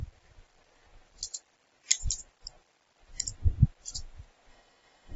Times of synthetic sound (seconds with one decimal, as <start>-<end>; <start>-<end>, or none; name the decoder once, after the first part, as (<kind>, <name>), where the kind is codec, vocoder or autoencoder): 4.5-5.2 (autoencoder, DAC-VAE)